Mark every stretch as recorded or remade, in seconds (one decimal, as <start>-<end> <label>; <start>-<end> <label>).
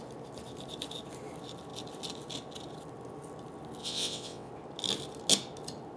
0.0-3.8 recorded; 3.8-4.5 remade; 4.5-6.0 recorded